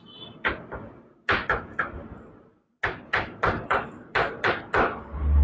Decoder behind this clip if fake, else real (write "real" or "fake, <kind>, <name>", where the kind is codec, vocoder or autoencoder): real